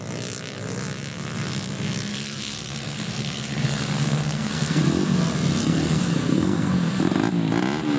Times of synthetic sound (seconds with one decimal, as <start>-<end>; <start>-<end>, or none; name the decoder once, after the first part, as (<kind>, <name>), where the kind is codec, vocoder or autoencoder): 2.1-4.8 (codec, SNAC); 5.6-7.0